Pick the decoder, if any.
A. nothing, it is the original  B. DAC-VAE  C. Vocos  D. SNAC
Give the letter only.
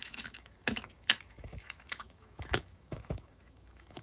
B